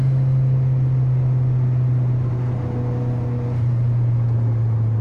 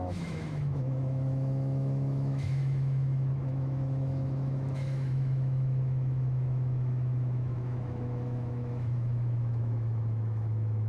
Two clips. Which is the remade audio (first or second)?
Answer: second